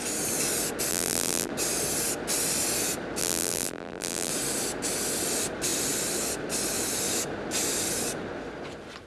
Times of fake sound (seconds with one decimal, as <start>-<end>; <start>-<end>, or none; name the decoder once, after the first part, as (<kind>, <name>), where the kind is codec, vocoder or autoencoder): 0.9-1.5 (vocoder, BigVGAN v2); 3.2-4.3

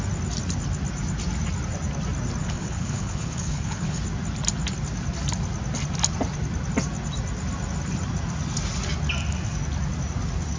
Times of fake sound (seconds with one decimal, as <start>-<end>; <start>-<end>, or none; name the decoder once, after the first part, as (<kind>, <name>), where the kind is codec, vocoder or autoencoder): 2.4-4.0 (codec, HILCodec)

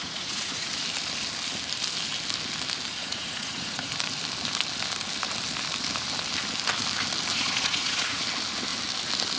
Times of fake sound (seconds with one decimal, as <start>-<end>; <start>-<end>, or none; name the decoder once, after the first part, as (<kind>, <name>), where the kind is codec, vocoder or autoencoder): 0.0-0.7 (vocoder, Vocos); 3.0-3.9; 7.3-8.2